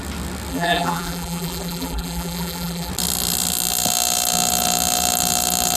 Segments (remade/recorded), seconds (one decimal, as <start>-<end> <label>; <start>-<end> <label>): 0.0-0.5 recorded; 0.5-2.9 remade; 2.9-5.8 recorded